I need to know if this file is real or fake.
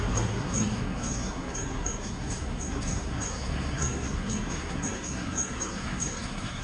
fake